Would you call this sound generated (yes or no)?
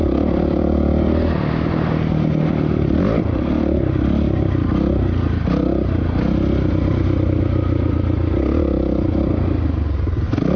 no